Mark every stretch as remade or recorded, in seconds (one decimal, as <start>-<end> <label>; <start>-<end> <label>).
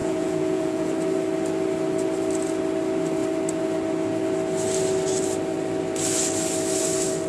0.0-0.9 remade; 0.9-7.3 recorded